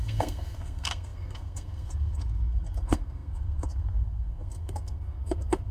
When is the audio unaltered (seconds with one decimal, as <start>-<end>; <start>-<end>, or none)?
none